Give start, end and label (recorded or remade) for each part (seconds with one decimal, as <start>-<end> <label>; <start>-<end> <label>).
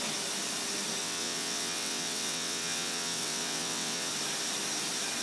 0.0-1.0 recorded; 1.0-4.1 remade; 4.1-5.2 recorded